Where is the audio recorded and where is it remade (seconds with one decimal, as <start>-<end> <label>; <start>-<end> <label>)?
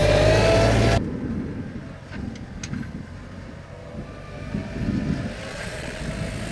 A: 0.0-5.5 recorded; 5.5-6.0 remade; 6.0-6.5 recorded